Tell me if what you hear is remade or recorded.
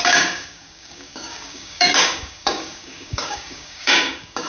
remade